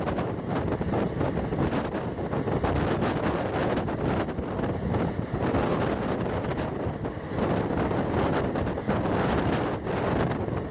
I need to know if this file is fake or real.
real